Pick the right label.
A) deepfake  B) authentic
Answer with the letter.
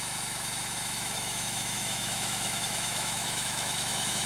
A